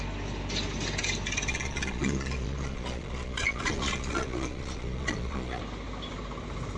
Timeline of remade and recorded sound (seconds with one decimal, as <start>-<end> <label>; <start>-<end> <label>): 0.0-1.5 recorded; 1.5-5.6 remade; 5.6-6.8 recorded